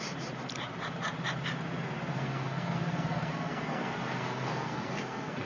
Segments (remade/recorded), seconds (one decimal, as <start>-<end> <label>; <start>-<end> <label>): 0.0-2.1 recorded; 2.1-5.5 remade